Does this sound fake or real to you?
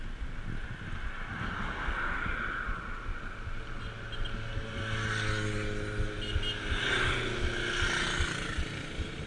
real